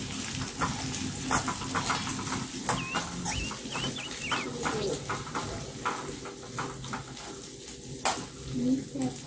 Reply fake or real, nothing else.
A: real